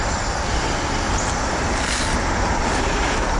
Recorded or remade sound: recorded